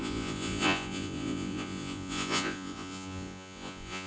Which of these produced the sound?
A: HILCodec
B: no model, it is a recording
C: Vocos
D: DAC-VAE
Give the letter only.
C